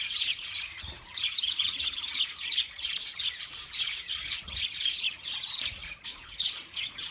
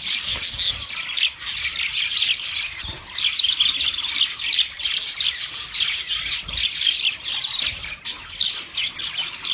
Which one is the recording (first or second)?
second